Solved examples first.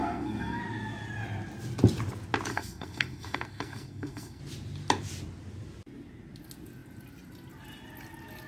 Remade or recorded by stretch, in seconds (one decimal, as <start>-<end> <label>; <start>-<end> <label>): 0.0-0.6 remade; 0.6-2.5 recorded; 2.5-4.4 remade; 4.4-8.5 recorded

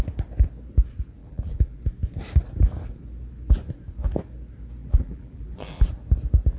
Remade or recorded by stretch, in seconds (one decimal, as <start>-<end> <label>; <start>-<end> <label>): 0.0-1.2 recorded; 1.2-1.8 remade; 1.8-4.8 recorded; 4.8-5.9 remade; 5.9-6.6 recorded

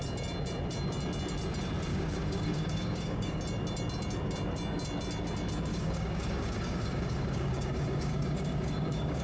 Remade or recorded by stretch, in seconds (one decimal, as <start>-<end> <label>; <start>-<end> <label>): 0.0-1.9 recorded; 1.9-3.4 remade; 3.4-5.7 recorded; 5.7-9.2 remade

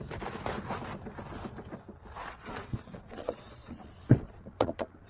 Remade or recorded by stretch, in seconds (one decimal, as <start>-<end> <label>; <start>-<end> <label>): 0.0-2.2 recorded; 2.2-5.1 remade

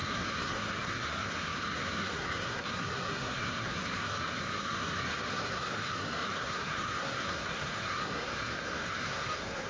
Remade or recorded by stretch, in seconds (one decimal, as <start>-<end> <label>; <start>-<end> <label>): 0.0-9.7 remade